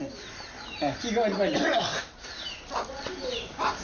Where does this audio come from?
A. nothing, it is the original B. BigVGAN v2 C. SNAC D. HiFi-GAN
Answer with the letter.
A